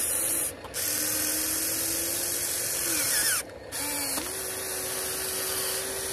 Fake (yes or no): no